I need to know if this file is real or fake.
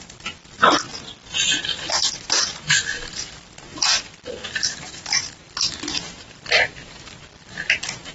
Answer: real